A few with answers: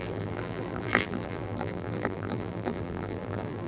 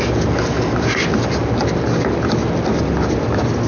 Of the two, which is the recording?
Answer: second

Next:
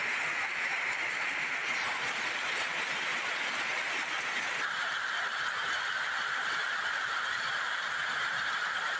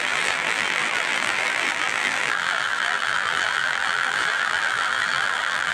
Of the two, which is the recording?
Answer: first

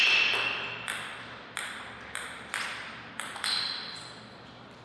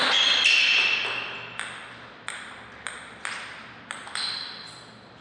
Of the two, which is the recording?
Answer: second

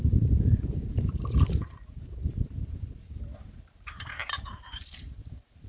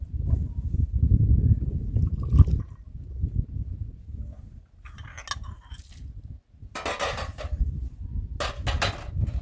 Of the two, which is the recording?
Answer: second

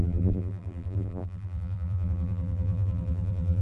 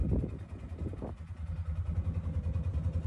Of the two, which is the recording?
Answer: second